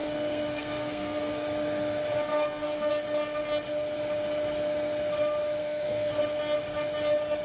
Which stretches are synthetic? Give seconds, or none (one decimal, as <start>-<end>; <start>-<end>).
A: 0.0-1.3; 2.3-2.9; 5.6-6.1

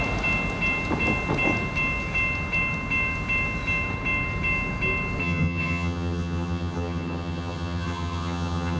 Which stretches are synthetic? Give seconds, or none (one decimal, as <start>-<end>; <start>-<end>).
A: 5.2-8.8

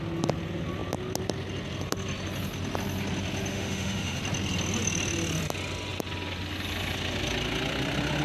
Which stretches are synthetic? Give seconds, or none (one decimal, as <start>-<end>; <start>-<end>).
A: 3.5-4.2

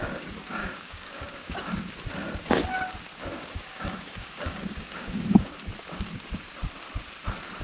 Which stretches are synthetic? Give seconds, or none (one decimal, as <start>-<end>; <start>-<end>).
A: 0.6-1.7; 3.1-5.5

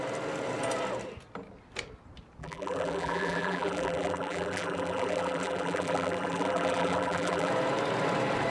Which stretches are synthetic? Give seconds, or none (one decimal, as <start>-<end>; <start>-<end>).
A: 2.4-7.5

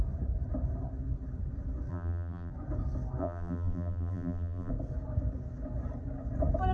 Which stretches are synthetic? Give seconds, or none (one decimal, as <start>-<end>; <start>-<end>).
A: 1.9-2.5; 3.2-4.7